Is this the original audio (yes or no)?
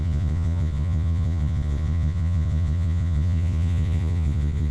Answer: no